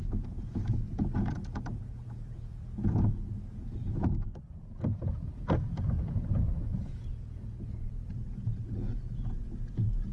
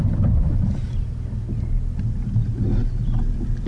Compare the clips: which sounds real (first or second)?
second